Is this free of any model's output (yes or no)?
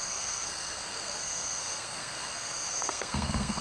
no